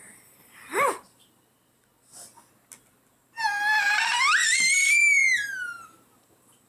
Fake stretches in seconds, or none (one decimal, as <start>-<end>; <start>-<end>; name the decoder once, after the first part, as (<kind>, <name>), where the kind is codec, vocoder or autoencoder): 0.0-1.9 (vocoder, BigVGAN v2); 3.8-5.2; 5.8-6.7